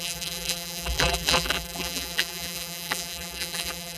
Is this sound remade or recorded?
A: remade